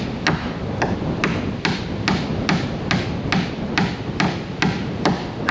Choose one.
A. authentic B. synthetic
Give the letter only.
A